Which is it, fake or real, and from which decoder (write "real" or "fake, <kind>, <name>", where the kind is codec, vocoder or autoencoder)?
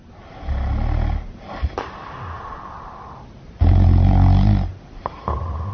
real